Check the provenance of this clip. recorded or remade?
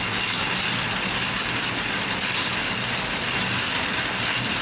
recorded